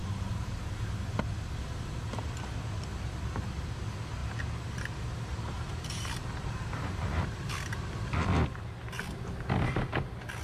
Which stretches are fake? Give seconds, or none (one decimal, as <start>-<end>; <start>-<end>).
0.0-0.7; 4.2-7.5